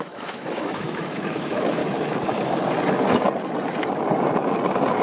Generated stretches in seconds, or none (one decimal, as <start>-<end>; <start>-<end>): 0.0-1.8